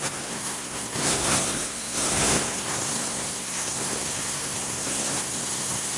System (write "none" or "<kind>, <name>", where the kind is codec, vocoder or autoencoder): codec, SNAC